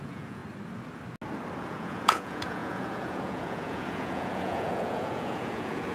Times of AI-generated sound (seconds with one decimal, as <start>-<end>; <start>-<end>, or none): 0.0-0.4; 1.6-5.9